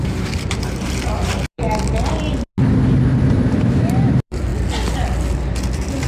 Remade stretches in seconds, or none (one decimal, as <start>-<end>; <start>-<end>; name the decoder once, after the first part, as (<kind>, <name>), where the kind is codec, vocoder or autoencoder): 0.0-2.5 (vocoder, BigVGAN v2); 3.3-4.5